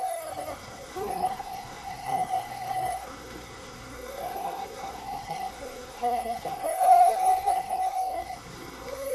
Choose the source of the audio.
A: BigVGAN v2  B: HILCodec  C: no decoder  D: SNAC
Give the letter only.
D